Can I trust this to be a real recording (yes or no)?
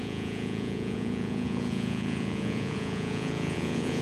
no